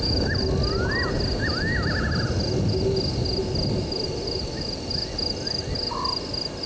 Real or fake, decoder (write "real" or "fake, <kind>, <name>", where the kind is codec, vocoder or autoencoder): real